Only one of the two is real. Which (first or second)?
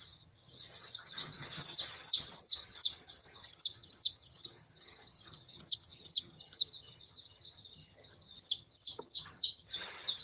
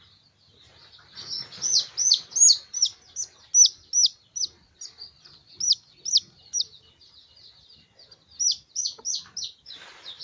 second